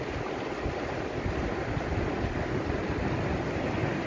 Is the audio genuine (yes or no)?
yes